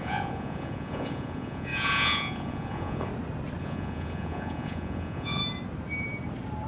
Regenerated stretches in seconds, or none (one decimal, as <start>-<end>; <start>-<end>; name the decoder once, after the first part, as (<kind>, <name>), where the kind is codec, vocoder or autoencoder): 0.0-3.1 (vocoder, Vocos); 3.6-5.4